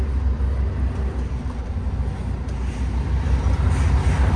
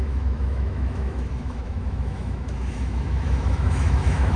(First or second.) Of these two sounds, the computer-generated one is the second